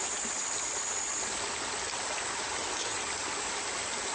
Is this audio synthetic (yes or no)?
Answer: no